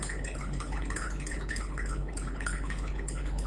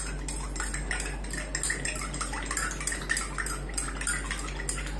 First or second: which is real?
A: second